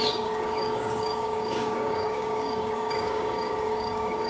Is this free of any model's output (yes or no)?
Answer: no